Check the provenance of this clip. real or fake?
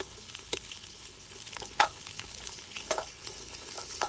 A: fake